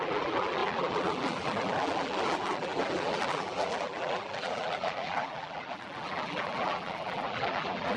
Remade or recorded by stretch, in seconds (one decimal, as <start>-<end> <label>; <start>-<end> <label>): 0.0-8.0 remade